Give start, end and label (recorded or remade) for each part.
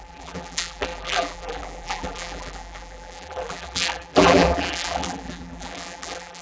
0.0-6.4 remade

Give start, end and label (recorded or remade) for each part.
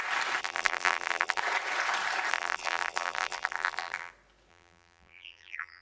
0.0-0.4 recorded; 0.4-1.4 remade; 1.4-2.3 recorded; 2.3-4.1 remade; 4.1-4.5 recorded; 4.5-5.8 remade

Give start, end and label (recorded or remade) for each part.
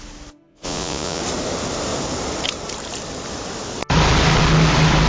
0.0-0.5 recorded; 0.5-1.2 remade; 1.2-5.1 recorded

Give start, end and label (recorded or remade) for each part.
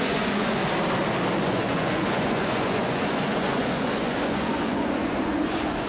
0.0-0.6 remade; 0.6-1.4 recorded; 1.4-5.9 remade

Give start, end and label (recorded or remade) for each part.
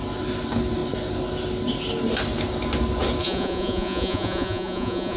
0.0-3.2 recorded; 3.2-5.2 remade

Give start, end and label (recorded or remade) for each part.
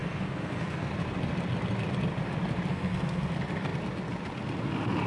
0.0-0.9 remade; 0.9-2.7 recorded; 2.7-3.3 remade; 3.3-5.1 recorded